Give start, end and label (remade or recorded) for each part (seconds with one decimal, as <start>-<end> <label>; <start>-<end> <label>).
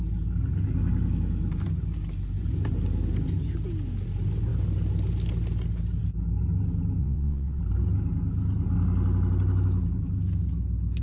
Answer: 0.0-7.0 recorded; 7.0-7.6 remade; 7.6-11.0 recorded